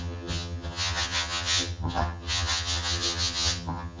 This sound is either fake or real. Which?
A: fake